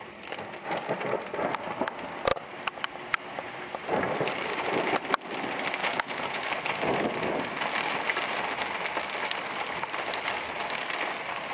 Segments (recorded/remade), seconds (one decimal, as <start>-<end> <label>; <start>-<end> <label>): 0.0-5.8 recorded; 5.8-6.4 remade; 6.4-11.5 recorded